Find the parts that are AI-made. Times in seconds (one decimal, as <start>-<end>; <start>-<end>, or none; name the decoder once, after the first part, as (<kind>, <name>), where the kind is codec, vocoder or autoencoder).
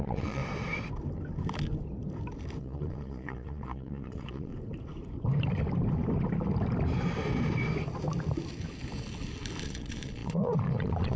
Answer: 0.0-0.4 (vocoder, Vocos); 2.6-4.5; 9.6-11.2